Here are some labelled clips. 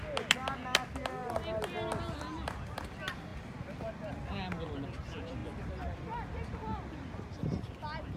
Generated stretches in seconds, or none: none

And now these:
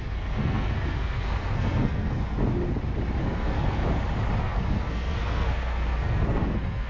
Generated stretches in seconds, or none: 0.0-2.4 (codec, SNAC); 3.2-3.8; 4.4-6.9

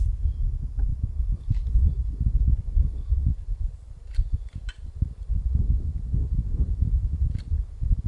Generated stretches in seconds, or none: 0.9-1.4 (vocoder, BigVGAN v2); 3.1-6.9

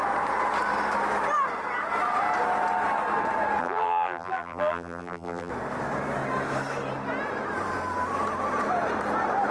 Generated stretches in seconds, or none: 3.6-5.5 (vocoder, BigVGAN v2)

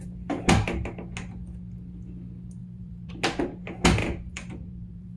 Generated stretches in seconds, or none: 2.6-3.1 (vocoder, BigVGAN v2); 4.0-5.2